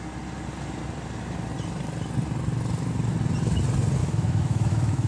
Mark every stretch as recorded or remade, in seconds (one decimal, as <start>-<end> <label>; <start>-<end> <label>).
0.0-4.0 recorded; 4.0-5.1 remade